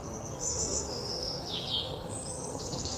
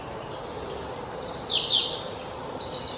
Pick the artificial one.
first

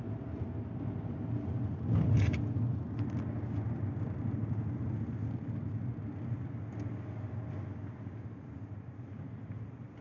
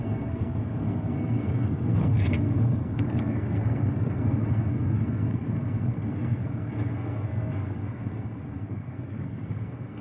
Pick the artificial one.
second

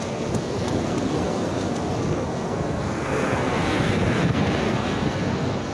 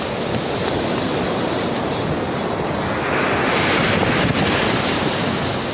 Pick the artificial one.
first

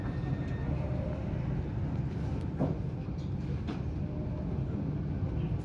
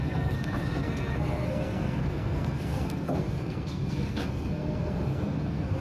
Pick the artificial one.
second